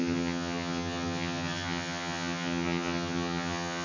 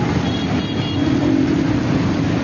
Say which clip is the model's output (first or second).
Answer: first